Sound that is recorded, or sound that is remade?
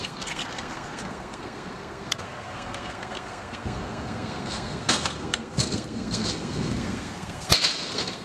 remade